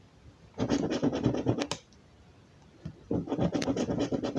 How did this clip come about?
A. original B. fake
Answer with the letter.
A